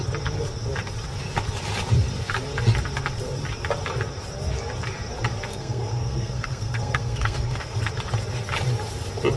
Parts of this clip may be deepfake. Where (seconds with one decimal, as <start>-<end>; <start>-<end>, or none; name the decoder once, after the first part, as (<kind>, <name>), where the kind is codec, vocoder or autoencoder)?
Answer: 5.5-7.9 (codec, SNAC)